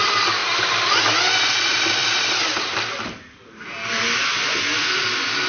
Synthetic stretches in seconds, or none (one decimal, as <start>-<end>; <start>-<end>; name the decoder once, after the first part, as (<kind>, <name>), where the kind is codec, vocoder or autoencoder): none